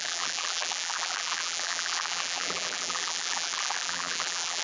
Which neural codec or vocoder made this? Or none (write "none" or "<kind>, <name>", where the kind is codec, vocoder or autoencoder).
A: vocoder, BigVGAN v2